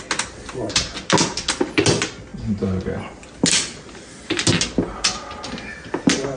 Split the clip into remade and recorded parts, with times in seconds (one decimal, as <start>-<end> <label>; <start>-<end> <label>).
0.0-6.4 recorded